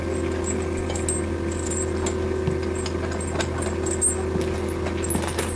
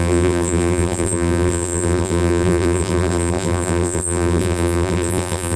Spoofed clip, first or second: second